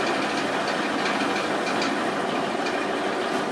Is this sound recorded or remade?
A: recorded